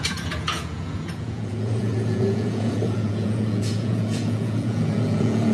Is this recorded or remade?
remade